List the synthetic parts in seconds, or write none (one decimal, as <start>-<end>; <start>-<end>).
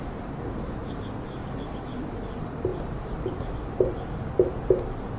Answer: 0.0-0.8; 2.0-5.2